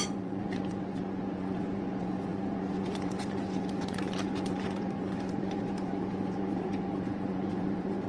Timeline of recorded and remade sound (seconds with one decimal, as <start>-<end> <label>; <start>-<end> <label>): 0.0-8.1 remade